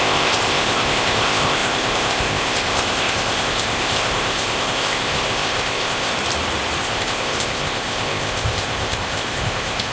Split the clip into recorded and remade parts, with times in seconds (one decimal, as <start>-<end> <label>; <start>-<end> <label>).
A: 0.0-6.1 remade; 6.1-6.8 recorded; 6.8-9.9 remade